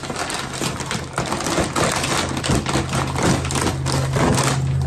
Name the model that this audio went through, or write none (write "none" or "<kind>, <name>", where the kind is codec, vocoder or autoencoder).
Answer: none